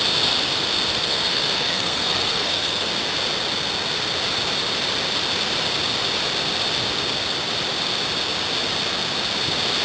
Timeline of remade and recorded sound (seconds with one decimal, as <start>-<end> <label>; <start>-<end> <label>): 0.0-0.9 recorded; 0.9-2.9 remade; 2.9-9.8 recorded